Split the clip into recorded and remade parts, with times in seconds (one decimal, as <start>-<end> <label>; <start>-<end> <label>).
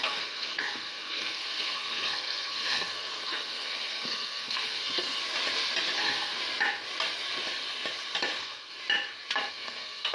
0.0-5.2 remade; 5.2-6.0 recorded; 6.0-6.4 remade; 6.4-8.4 recorded; 8.4-8.8 remade; 8.8-9.5 recorded; 9.5-10.1 remade